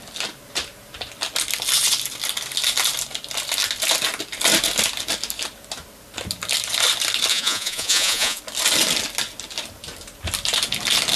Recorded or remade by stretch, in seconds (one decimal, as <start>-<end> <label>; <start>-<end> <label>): 0.0-7.3 recorded; 7.3-8.4 remade; 8.4-11.2 recorded